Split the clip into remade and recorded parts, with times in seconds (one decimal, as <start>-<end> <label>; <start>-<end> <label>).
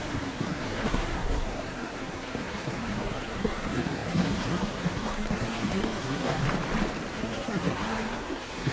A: 0.0-6.4 remade; 6.4-7.1 recorded; 7.1-8.7 remade